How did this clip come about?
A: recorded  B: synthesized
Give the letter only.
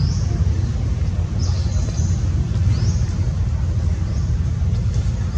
A